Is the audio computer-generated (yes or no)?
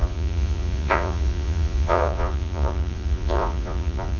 yes